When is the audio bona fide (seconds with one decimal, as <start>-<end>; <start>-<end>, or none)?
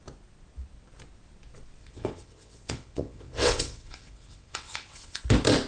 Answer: 0.0-1.8; 5.2-5.7